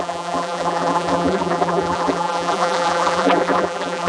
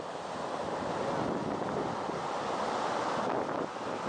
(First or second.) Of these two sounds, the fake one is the first